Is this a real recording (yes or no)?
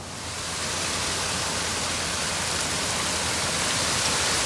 yes